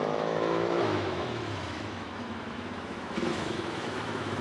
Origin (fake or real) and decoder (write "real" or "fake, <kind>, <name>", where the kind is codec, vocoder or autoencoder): fake, autoencoder, DAC-VAE